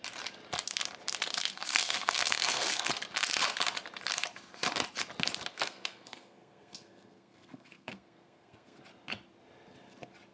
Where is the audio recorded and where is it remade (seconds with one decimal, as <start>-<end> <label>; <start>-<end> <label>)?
0.0-1.5 recorded; 1.5-2.9 remade; 2.9-5.5 recorded; 5.5-8.8 remade; 8.8-10.3 recorded